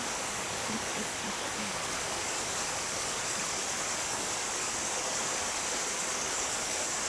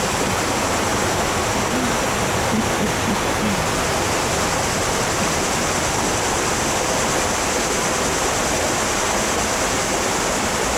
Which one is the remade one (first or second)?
first